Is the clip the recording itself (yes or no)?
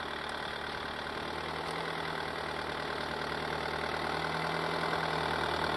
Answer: yes